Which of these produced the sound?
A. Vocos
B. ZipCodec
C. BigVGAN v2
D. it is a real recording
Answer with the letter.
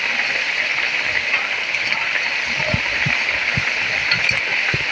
D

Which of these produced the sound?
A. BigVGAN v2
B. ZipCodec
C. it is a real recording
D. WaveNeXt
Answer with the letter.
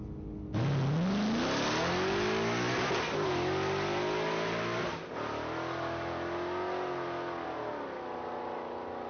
C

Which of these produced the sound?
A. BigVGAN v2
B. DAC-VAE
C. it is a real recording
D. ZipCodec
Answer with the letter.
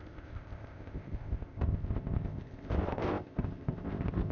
D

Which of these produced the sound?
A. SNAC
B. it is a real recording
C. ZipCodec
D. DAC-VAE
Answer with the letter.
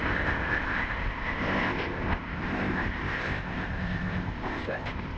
C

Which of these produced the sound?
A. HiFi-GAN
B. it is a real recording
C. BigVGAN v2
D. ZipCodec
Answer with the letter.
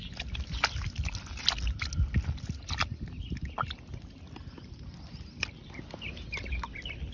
B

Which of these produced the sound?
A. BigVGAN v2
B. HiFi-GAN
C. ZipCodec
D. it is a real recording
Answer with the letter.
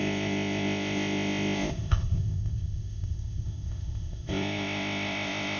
C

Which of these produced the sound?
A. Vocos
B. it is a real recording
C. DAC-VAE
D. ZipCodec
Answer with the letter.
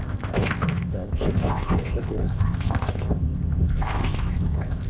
D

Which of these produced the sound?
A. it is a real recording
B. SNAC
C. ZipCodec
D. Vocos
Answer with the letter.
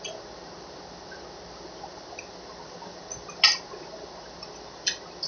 A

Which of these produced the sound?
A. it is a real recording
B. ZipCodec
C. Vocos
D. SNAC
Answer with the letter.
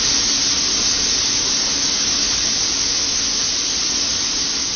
A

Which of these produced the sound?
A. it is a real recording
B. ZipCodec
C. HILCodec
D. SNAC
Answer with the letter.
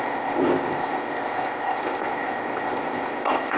B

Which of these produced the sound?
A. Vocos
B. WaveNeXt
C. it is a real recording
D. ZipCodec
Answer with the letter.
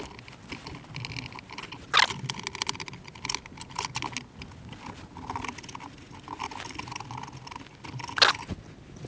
C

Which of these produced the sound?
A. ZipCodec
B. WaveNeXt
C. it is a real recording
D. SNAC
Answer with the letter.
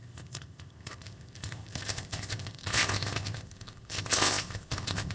A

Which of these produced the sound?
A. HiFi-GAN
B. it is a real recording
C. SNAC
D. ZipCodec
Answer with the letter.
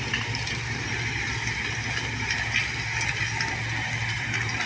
B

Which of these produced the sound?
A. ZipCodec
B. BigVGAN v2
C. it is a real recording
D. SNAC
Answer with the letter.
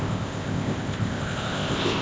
A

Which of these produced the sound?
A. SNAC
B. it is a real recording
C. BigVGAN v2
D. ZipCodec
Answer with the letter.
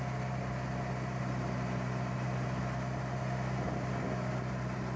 B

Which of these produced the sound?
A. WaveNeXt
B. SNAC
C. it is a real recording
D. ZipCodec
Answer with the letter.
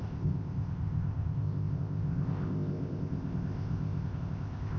D